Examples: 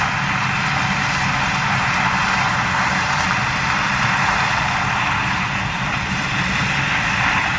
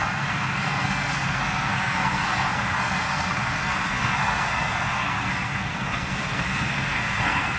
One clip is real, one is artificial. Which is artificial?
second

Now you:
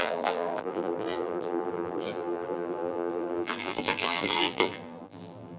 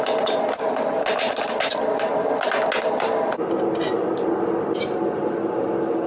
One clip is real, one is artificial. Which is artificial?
first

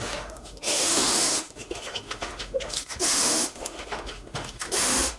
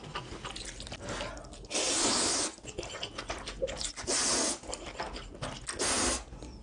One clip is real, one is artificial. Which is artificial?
first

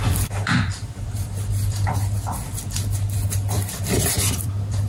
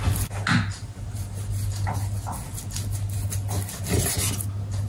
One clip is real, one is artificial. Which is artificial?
first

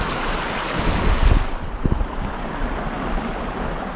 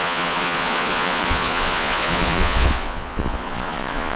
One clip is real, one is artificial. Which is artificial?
second